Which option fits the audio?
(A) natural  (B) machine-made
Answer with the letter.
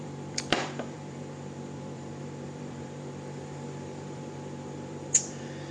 B